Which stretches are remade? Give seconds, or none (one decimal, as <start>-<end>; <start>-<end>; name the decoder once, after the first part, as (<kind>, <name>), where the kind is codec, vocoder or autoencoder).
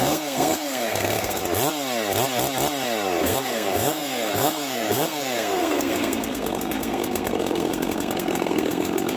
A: 0.0-1.4 (codec, SNAC); 3.2-9.2